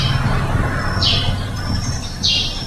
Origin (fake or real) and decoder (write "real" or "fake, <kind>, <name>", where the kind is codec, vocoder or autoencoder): real